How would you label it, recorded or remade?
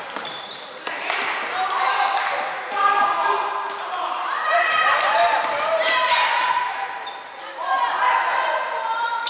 remade